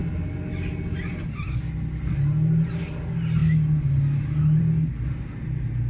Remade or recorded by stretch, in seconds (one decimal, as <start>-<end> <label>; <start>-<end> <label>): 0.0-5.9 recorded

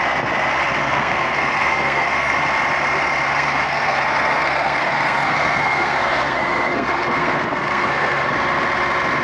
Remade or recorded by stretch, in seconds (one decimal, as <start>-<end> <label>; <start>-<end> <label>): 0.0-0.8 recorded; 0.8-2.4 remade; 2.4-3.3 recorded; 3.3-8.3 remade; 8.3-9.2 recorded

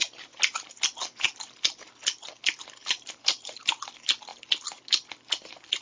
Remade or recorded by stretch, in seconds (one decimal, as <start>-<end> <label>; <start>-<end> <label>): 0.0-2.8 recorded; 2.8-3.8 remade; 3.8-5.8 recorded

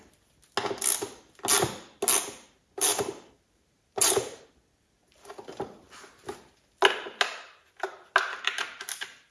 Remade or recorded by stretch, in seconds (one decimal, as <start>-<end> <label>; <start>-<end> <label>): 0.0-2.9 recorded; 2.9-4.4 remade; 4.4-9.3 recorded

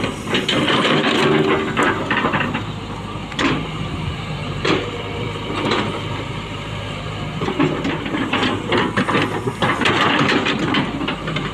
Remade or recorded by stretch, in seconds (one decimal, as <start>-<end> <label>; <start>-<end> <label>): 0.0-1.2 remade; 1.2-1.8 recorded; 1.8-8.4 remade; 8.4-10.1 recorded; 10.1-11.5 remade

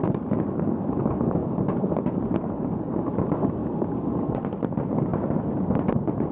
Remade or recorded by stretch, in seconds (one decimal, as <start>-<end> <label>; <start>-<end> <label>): 0.0-5.1 recorded; 5.1-6.3 remade